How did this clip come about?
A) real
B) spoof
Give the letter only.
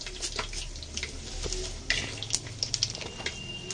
A